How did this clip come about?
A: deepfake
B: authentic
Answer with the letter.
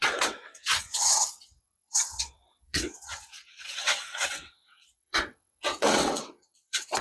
A